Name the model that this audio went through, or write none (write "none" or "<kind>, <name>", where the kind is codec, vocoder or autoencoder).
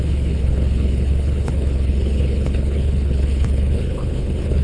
codec, HILCodec